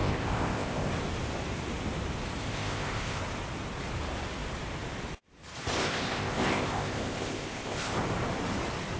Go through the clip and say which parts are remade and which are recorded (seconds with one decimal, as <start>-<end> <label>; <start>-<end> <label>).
0.0-0.9 remade; 0.9-2.4 recorded; 2.4-3.2 remade; 3.2-5.7 recorded; 5.7-8.0 remade; 8.0-9.0 recorded